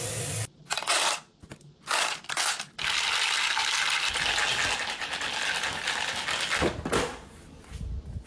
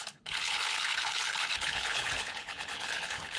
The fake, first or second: second